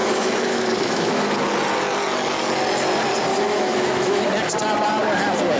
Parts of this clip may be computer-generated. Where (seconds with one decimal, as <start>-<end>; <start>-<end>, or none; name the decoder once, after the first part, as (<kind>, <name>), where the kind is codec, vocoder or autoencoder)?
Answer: 0.0-1.3 (autoencoder, DAC-VAE); 3.3-4.3